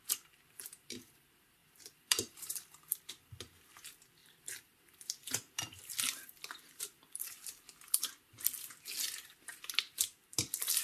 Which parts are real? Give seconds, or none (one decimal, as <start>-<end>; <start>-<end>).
0.0-1.6; 3.1-4.2; 8.7-10.8